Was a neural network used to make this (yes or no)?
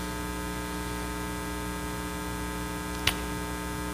no